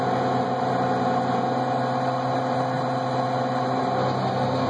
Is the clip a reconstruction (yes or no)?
no